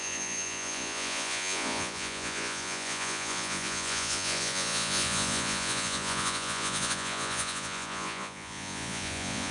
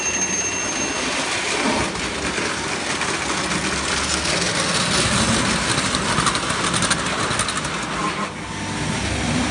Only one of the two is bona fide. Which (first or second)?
second